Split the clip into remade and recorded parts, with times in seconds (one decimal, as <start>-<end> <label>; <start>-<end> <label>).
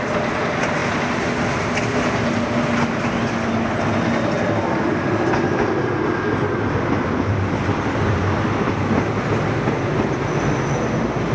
0.0-11.3 recorded